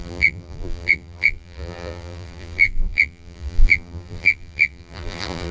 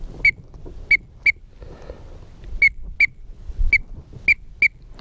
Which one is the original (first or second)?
second